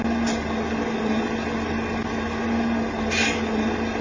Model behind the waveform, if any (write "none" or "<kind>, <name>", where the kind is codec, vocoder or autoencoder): none